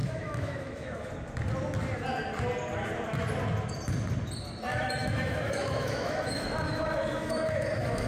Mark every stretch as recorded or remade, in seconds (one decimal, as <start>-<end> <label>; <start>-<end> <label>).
0.0-1.1 remade; 1.1-4.7 recorded; 4.7-8.1 remade